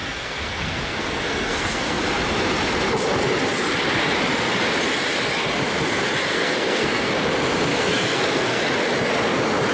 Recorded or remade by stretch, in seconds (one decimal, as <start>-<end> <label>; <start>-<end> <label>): 0.0-2.0 remade; 2.0-6.3 recorded; 6.3-7.1 remade; 7.1-7.7 recorded; 7.7-8.6 remade; 8.6-9.7 recorded